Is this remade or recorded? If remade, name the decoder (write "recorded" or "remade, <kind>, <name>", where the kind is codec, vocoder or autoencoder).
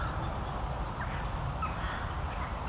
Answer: recorded